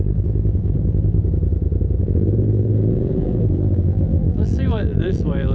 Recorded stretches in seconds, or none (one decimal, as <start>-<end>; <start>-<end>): 1.2-2.0